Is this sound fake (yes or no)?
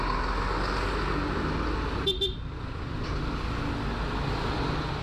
no